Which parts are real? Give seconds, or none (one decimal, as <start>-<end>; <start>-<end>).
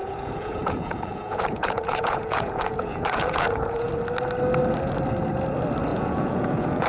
3.9-5.9